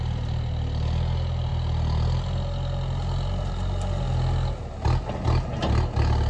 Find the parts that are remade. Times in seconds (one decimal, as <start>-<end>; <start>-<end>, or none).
none